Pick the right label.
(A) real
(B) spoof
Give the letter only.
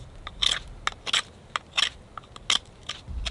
A